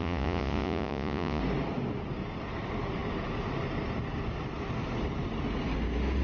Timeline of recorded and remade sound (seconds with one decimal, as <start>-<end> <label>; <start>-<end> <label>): 0.0-1.4 remade; 1.4-6.2 recorded